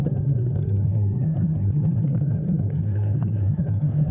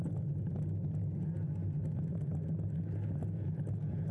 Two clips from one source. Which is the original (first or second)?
second